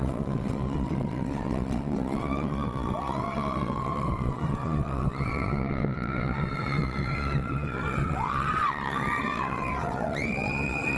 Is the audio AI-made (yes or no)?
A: yes